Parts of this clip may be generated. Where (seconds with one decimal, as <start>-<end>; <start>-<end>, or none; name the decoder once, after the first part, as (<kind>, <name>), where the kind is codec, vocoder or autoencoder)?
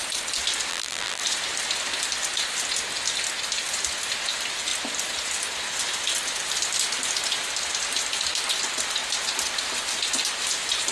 0.7-1.2 (vocoder, BigVGAN v2)